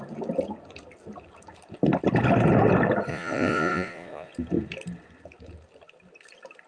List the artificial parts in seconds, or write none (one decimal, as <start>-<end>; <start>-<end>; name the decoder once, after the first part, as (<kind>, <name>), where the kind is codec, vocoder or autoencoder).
3.1-4.3 (vocoder, Vocos)